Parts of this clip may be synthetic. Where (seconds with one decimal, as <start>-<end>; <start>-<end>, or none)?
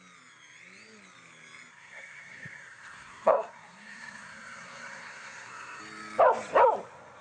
1.7-5.8